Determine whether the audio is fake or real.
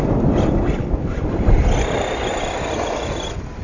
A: real